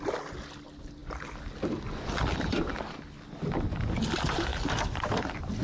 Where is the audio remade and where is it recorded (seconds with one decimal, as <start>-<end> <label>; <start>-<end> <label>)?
0.0-5.6 recorded